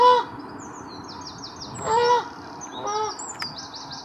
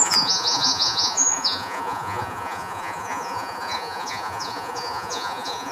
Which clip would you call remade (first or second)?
second